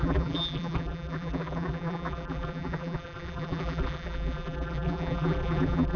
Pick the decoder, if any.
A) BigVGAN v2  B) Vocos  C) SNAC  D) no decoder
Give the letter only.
A